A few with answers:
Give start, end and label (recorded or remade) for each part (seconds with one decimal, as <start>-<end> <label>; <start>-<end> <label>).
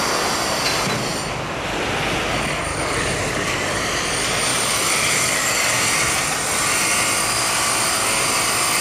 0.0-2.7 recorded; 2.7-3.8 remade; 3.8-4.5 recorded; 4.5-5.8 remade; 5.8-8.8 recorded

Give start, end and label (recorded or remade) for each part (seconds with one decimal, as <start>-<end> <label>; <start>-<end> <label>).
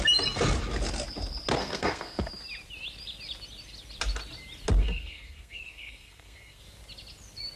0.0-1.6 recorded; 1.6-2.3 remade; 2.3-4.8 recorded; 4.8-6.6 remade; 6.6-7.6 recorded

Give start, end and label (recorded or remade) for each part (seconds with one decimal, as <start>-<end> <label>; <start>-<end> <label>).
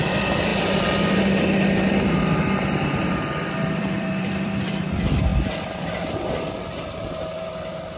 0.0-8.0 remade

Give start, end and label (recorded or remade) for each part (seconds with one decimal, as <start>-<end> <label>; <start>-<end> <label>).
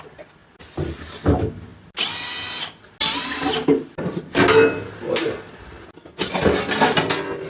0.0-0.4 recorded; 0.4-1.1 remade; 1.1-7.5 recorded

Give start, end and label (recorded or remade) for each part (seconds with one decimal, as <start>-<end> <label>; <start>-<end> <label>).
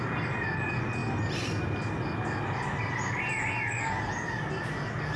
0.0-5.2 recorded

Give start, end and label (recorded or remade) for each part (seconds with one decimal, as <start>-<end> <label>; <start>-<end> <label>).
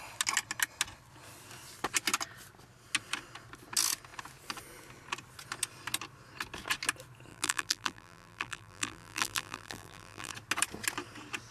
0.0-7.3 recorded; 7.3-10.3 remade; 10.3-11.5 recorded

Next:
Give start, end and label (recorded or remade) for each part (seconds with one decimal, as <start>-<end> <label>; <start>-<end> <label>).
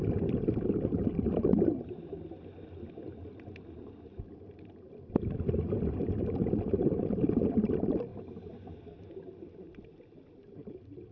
0.0-11.1 recorded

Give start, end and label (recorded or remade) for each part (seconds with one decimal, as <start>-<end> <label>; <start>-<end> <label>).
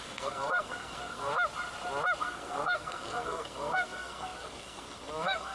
0.0-1.3 remade; 1.3-2.2 recorded; 2.2-5.5 remade